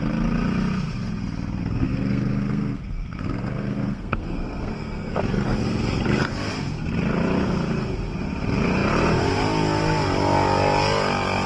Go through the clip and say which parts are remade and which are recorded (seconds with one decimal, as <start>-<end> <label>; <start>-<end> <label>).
0.0-1.6 recorded; 1.6-5.2 remade; 5.2-11.5 recorded